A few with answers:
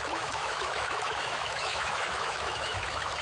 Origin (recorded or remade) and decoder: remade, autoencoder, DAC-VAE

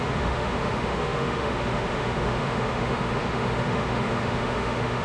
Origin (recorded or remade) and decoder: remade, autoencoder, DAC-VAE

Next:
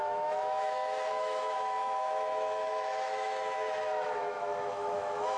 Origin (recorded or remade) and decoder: remade, autoencoder, DAC-VAE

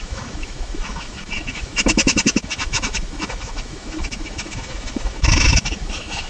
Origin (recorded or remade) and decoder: remade, autoencoder, DAC-VAE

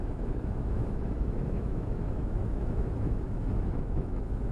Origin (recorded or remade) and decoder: remade, autoencoder, DAC-VAE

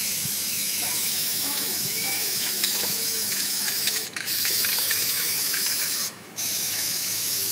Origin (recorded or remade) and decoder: remade, autoencoder, DAC-VAE